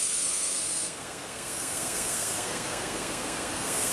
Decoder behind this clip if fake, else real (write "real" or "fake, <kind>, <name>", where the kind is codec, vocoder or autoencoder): fake, codec, SNAC